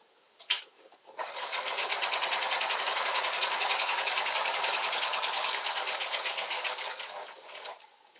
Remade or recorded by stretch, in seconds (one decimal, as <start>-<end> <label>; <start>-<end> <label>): 0.0-1.9 remade; 1.9-2.8 recorded; 2.8-8.2 remade